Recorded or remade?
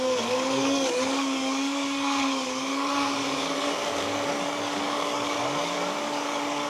remade